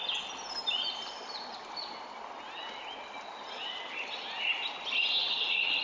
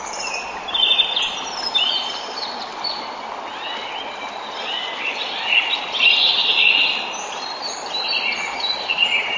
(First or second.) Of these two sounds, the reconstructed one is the second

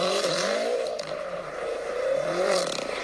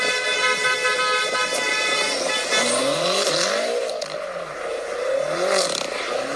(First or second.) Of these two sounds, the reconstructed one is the first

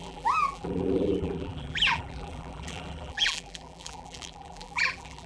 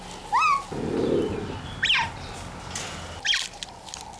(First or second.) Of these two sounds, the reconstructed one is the first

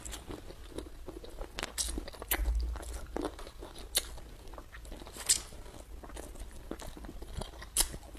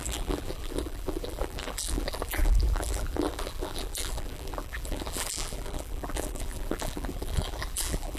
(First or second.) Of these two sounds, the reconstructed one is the second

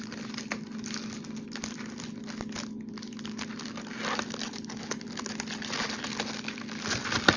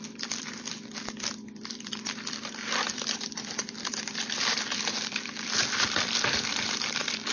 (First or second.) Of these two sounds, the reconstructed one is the second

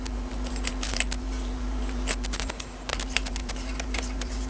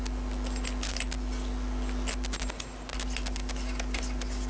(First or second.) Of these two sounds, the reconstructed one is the first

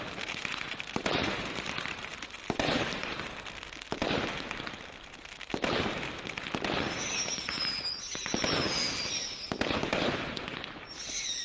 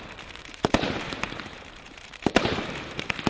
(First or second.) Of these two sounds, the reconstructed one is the second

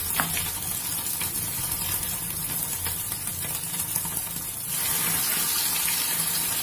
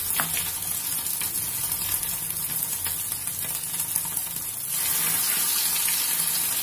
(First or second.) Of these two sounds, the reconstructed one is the first